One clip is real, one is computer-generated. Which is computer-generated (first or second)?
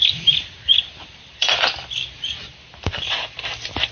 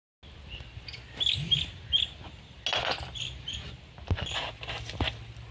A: first